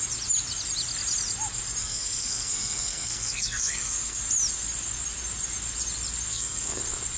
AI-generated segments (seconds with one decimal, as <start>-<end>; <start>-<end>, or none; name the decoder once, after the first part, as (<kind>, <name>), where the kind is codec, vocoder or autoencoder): 1.8-4.2 (codec, SNAC); 6.3-6.8